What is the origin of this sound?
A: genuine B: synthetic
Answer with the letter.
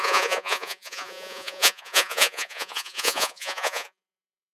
B